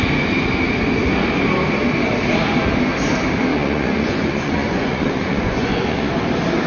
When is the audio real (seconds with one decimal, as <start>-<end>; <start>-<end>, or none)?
0.0-3.5; 6.1-6.7